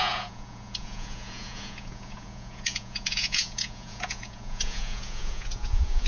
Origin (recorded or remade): remade